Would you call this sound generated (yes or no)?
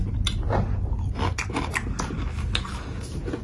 no